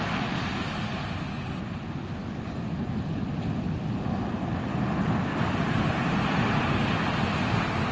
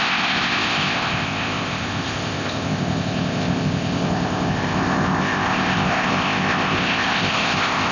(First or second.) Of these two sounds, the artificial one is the second